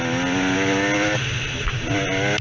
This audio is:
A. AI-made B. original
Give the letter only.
B